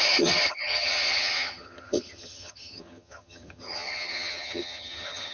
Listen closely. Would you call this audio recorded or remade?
remade